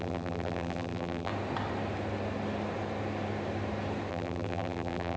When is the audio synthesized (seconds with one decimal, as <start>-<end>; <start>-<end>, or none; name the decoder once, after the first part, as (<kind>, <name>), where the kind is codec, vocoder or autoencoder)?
0.0-1.3 (vocoder, BigVGAN v2); 4.1-5.2